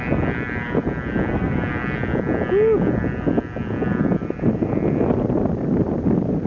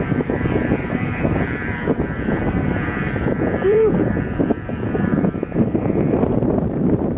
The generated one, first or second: second